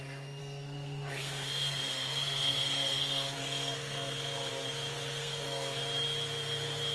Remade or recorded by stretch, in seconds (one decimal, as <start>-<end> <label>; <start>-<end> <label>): 0.0-0.4 recorded; 0.4-4.5 remade; 4.5-5.2 recorded; 5.2-5.8 remade; 5.8-6.9 recorded